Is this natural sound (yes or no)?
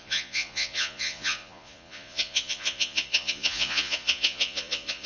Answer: no